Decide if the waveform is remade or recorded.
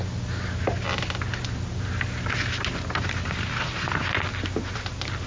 recorded